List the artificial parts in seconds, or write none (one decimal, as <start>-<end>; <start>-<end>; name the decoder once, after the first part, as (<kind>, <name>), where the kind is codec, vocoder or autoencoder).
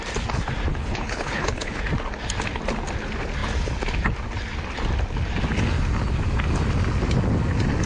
0.7-1.8 (codec, HILCodec)